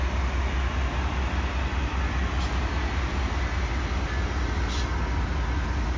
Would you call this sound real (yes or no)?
yes